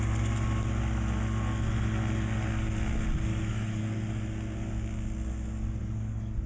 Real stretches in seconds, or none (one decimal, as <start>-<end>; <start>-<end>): 0.0-3.3; 3.8-5.8